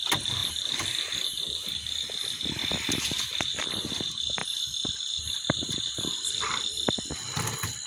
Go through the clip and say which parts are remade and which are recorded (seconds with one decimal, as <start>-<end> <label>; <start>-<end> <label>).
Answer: 0.0-7.9 recorded